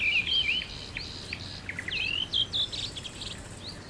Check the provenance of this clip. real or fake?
real